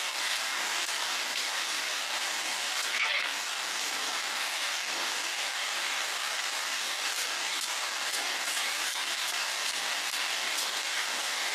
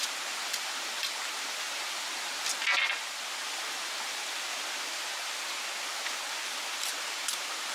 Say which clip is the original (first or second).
second